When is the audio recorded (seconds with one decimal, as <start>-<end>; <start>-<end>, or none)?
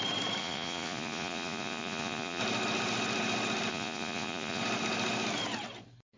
0.0-0.4; 2.4-3.7; 4.6-6.2